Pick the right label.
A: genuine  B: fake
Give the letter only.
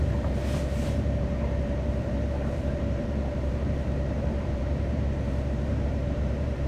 B